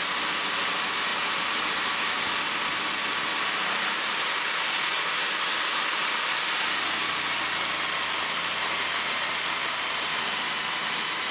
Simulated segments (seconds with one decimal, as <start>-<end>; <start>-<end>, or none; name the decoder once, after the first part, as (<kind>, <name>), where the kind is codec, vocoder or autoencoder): none